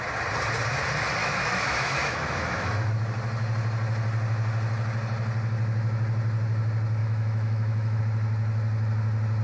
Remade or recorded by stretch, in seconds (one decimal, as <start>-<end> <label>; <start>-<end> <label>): 0.0-1.2 recorded; 1.2-2.9 remade; 2.9-7.0 recorded; 7.0-8.0 remade; 8.0-9.4 recorded